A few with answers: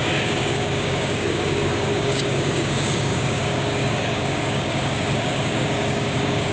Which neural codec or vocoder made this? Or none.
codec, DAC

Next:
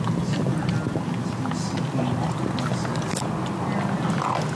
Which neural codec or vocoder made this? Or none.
none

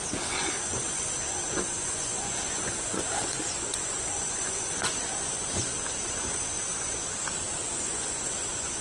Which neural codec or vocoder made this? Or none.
vocoder, Vocos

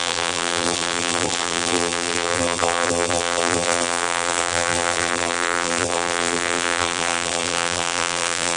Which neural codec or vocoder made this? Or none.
vocoder, BigVGAN v2